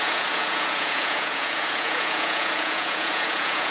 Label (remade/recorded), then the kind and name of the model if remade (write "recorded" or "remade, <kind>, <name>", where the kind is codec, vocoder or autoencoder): remade, vocoder, Vocos